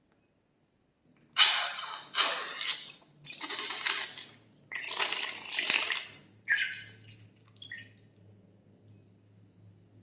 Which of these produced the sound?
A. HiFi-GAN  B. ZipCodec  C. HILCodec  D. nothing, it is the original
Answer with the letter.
D